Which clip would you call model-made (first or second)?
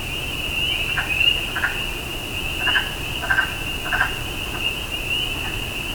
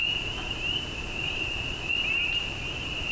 second